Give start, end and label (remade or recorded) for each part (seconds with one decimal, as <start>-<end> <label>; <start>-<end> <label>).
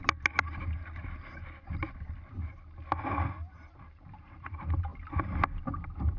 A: 0.0-3.7 recorded; 3.7-4.9 remade; 4.9-5.6 recorded; 5.6-6.2 remade